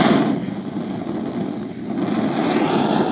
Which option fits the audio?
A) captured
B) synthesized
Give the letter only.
A